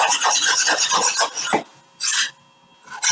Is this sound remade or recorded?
recorded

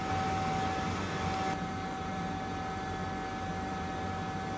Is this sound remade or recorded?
recorded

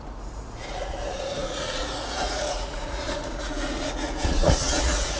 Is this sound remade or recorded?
remade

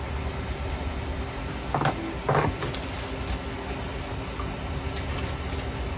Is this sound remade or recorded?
recorded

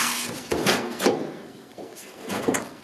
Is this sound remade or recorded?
remade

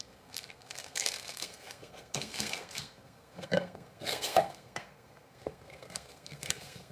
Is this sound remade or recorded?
remade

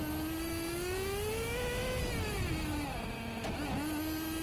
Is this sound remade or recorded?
recorded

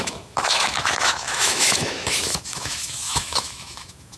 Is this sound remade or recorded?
remade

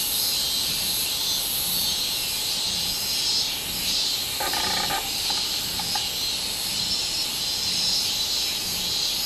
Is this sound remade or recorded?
recorded